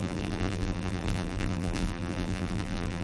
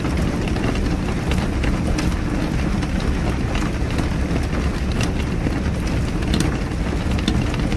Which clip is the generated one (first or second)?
first